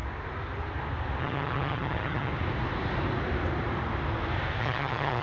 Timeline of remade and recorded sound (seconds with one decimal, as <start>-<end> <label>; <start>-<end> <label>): 0.0-1.2 recorded; 1.2-2.3 remade; 2.3-4.6 recorded; 4.6-5.2 remade